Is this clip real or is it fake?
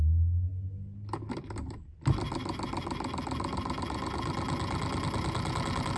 real